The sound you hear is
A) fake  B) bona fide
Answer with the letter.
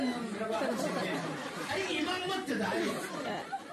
B